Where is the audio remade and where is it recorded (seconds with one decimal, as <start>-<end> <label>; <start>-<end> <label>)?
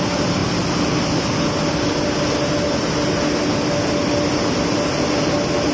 0.0-5.7 recorded